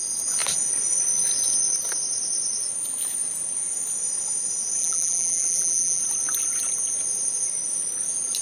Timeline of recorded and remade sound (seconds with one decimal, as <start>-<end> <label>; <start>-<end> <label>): 0.0-4.8 recorded; 4.8-6.0 remade; 6.0-8.4 recorded